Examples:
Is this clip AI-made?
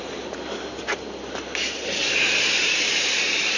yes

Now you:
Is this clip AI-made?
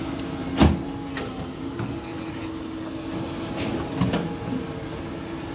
no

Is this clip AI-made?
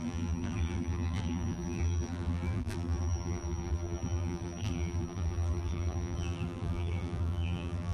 yes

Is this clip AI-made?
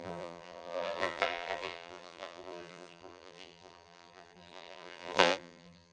yes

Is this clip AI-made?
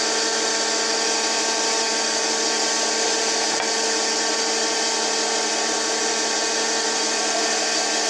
no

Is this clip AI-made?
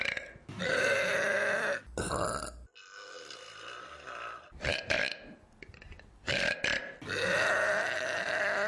no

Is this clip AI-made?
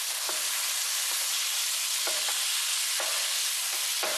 no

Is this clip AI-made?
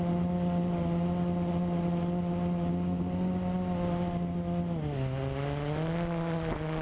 no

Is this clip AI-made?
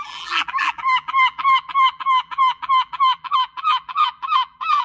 yes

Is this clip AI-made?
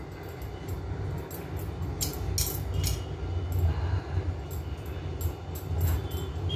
no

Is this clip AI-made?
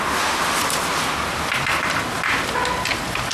no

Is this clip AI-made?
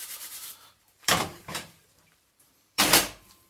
yes